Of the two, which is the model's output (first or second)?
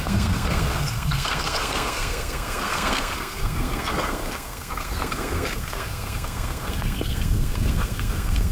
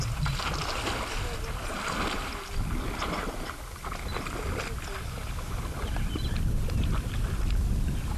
first